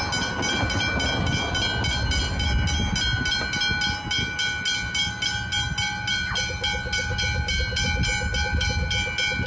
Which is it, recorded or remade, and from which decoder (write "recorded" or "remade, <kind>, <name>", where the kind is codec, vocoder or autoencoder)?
recorded